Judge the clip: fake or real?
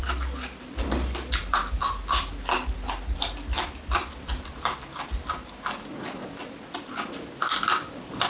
real